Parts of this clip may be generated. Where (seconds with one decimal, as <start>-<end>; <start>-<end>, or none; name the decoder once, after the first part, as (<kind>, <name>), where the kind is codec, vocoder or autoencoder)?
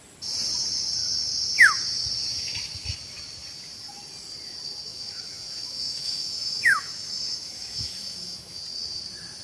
4.9-8.6 (autoencoder, DAC-VAE)